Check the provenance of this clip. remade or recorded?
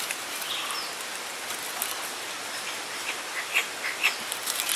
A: recorded